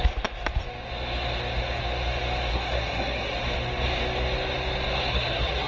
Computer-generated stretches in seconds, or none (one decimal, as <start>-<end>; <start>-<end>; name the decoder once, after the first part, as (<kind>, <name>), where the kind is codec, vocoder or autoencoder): 2.5-3.3 (codec, SNAC); 5.1-5.7